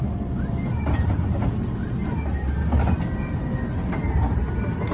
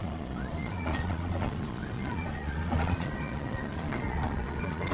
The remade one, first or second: second